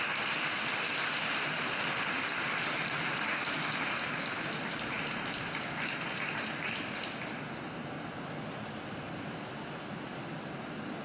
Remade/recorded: recorded